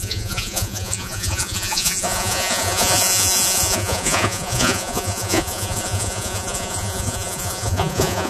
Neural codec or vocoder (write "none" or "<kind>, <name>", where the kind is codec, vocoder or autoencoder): vocoder, Vocos